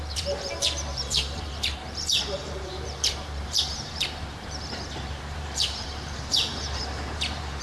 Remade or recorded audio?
remade